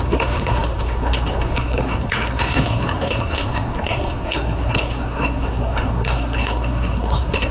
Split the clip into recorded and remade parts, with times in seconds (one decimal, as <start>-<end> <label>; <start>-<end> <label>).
0.0-7.5 remade